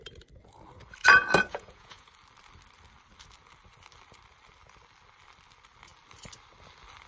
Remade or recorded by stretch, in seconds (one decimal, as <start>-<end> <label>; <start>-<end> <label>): 0.0-1.5 recorded; 1.5-2.1 remade; 2.1-7.1 recorded